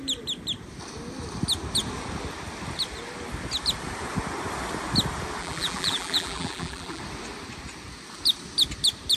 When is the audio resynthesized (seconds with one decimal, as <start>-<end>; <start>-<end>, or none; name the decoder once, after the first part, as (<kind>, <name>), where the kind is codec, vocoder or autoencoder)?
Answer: 5.4-7.0 (vocoder, BigVGAN v2)

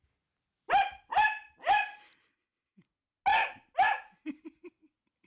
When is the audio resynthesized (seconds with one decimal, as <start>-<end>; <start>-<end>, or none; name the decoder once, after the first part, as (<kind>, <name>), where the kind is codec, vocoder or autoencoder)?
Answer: none

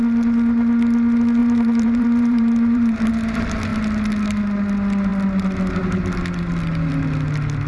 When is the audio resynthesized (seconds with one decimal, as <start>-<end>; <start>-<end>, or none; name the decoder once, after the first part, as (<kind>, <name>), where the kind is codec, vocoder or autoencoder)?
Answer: 1.4-3.1 (vocoder, BigVGAN v2)

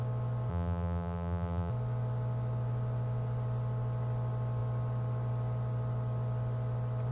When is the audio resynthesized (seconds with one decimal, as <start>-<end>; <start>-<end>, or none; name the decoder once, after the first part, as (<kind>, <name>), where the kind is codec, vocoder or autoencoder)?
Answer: 0.5-1.7 (vocoder, BigVGAN v2)

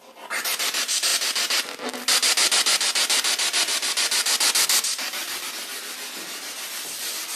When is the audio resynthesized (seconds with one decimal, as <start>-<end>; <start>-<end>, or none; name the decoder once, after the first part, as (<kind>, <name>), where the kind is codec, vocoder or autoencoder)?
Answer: none

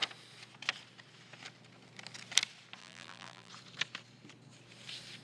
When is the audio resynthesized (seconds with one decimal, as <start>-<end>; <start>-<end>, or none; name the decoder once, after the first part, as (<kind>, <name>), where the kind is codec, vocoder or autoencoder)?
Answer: 2.8-3.5 (vocoder, BigVGAN v2)

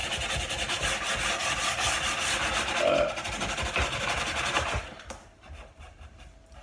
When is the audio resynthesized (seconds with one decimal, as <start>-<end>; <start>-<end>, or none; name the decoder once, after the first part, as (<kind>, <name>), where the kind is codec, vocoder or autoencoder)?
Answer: none